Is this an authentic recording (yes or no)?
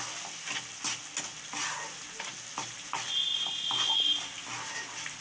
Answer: yes